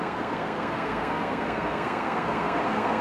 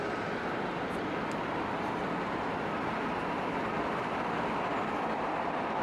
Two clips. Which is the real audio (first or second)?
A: second